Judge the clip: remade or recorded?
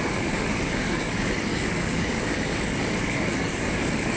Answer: remade